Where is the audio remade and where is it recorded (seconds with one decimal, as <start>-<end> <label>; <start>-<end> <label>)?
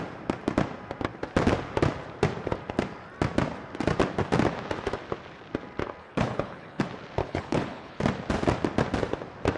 0.0-6.0 recorded; 6.0-6.8 remade; 6.8-7.2 recorded; 7.2-8.0 remade; 8.0-9.6 recorded